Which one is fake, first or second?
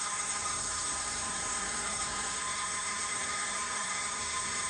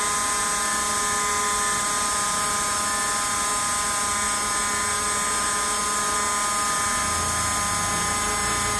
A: first